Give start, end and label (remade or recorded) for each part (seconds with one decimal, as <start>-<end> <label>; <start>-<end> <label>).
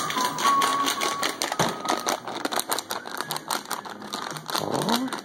0.0-5.2 recorded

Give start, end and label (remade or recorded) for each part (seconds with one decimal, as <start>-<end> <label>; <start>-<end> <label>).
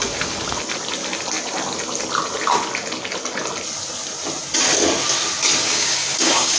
0.0-5.6 recorded; 5.6-6.6 remade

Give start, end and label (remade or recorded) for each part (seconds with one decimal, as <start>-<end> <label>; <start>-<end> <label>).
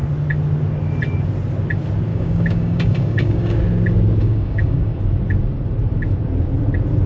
0.0-2.1 recorded; 2.1-3.6 remade; 3.6-4.2 recorded; 4.2-5.0 remade; 5.0-7.1 recorded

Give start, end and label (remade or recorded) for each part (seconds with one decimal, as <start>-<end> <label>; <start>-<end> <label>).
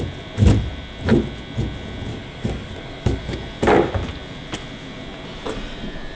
0.0-2.1 recorded; 2.1-3.2 remade; 3.2-6.1 recorded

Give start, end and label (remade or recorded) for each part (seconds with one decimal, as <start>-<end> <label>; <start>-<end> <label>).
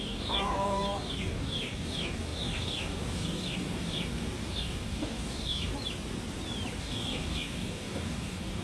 0.0-5.7 remade; 5.7-6.8 recorded; 6.8-8.6 remade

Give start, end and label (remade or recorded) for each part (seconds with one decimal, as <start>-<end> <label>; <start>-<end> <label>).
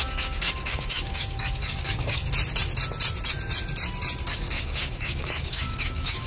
0.0-2.2 remade; 2.2-4.3 recorded; 4.3-6.3 remade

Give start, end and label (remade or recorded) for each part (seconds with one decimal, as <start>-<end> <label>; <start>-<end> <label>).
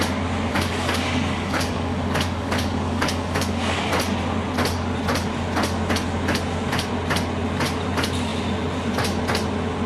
0.0-0.5 recorded; 0.5-3.9 remade; 3.9-9.9 recorded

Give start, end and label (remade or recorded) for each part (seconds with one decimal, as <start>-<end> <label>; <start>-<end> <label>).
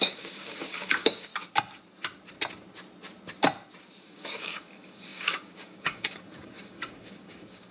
0.0-1.3 remade; 1.3-4.0 recorded; 4.0-7.7 remade